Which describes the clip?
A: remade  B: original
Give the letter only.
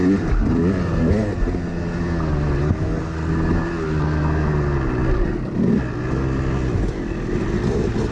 B